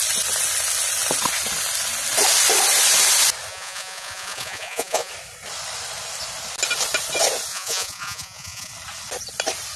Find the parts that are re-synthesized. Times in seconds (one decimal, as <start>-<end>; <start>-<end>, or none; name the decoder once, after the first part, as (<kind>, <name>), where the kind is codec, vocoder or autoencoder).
3.5-5.1 (vocoder, Vocos); 7.5-8.7